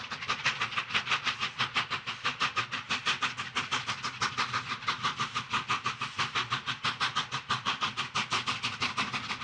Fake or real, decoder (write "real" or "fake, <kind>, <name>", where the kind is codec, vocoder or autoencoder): real